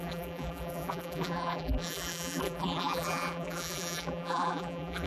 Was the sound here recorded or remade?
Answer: remade